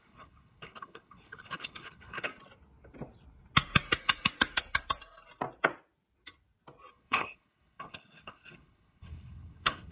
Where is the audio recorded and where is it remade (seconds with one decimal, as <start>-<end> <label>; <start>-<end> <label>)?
0.0-2.3 remade; 2.3-6.9 recorded; 6.9-9.9 remade